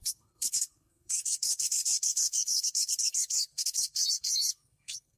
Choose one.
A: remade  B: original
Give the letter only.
A